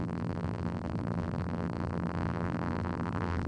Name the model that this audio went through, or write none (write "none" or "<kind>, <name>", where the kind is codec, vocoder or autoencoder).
vocoder, BigVGAN v2